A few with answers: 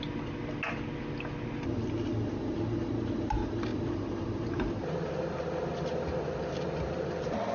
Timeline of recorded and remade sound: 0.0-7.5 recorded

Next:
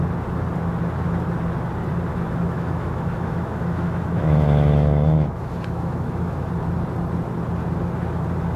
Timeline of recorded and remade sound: 0.0-2.1 recorded; 2.1-6.5 remade; 6.5-8.6 recorded

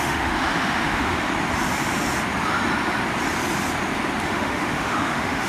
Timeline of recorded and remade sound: 0.0-1.3 remade; 1.3-4.2 recorded; 4.2-5.5 remade